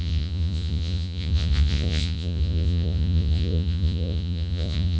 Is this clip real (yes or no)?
no